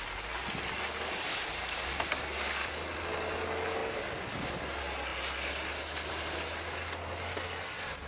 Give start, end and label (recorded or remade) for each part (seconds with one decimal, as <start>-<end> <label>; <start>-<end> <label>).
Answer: 0.0-8.1 recorded